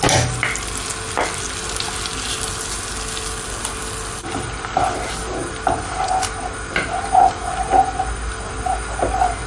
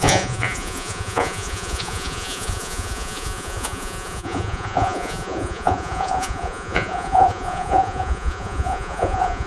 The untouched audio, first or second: first